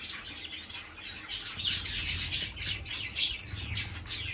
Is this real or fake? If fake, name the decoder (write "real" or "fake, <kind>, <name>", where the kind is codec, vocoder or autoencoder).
real